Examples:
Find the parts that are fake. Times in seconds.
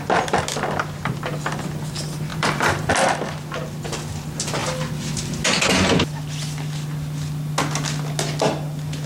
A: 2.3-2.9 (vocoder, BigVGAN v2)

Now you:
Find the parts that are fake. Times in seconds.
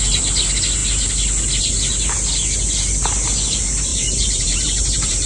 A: 3.9-5.3 (vocoder, BigVGAN v2)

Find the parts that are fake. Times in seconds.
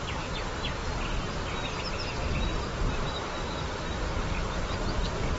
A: 2.2-5.4 (vocoder, BigVGAN v2)